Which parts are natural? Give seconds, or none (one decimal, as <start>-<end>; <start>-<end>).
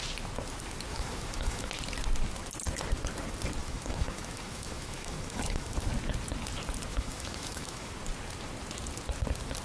0.0-0.9; 1.7-3.6; 5.9-6.9; 7.9-9.6